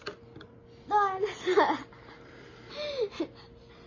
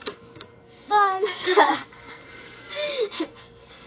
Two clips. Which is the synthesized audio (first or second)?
second